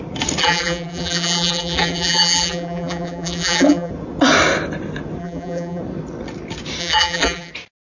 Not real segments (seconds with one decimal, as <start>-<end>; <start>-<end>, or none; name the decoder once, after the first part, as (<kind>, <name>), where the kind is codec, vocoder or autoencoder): 0.4-3.9 (vocoder, BigVGAN v2); 5.2-5.8; 6.8-7.5